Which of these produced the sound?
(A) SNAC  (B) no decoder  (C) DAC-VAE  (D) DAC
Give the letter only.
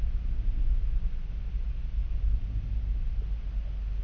B